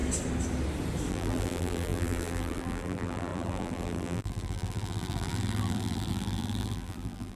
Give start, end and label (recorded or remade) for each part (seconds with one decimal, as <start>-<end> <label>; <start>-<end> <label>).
0.0-1.1 recorded; 1.1-7.4 remade

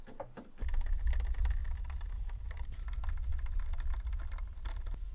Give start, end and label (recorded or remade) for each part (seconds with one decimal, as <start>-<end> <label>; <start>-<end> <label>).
0.0-1.6 recorded; 1.6-2.4 remade; 2.4-5.1 recorded